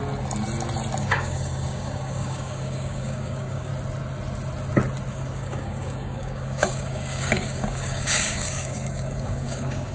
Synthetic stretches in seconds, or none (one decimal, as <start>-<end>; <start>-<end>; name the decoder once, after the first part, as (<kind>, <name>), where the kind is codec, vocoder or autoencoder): 1.0-3.7 (codec, DAC); 5.1-9.9